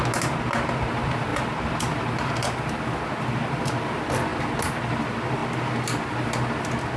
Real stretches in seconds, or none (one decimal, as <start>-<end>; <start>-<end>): 0.0-0.9; 4.3-5.0; 5.4-7.0